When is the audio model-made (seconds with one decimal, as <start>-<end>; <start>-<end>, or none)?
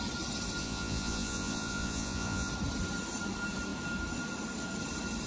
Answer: 0.6-2.5